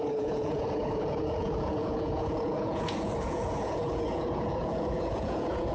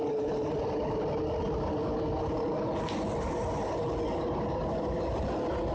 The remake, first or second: first